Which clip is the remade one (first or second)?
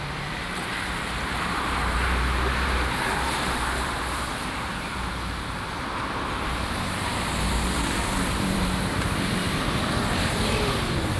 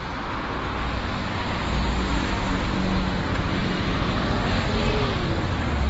first